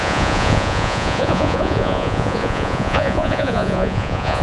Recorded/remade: remade